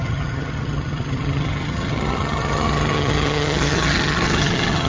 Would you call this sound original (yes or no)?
no